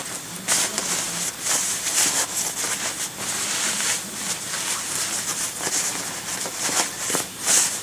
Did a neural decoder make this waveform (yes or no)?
no